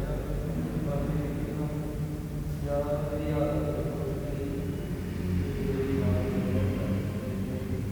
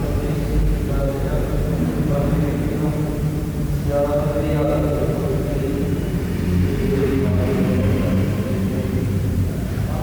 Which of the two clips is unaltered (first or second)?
first